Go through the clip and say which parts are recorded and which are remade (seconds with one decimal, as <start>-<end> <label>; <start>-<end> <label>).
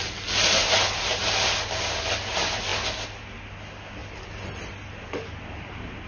0.0-6.1 recorded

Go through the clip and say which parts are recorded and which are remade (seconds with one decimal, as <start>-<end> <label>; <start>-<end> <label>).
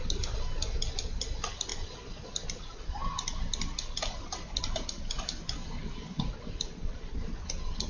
0.0-7.9 recorded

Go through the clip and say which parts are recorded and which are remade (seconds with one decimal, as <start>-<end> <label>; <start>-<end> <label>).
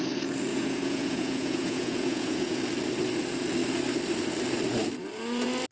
0.0-0.5 recorded; 0.5-2.6 remade; 2.6-5.7 recorded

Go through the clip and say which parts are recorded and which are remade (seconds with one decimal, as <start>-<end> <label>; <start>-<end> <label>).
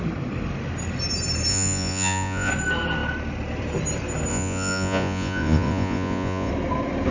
0.0-1.5 recorded; 1.5-2.5 remade; 2.5-4.3 recorded; 4.3-6.5 remade; 6.5-7.1 recorded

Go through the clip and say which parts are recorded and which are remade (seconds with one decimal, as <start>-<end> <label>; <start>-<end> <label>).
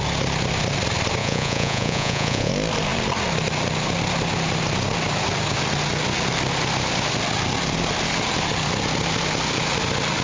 0.0-1.2 recorded; 1.2-2.5 remade; 2.5-10.2 recorded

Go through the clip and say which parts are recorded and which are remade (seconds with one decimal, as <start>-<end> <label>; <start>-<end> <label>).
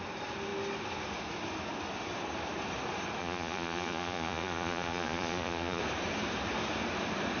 0.0-3.2 recorded; 3.2-5.8 remade; 5.8-7.4 recorded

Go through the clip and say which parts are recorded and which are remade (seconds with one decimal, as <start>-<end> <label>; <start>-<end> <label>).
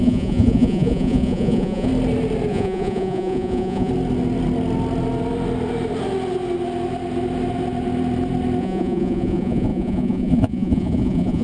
0.0-1.9 remade; 1.9-2.5 recorded; 2.5-3.9 remade; 3.9-8.6 recorded; 8.6-11.4 remade